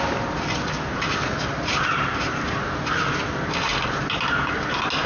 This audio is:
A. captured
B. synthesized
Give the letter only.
A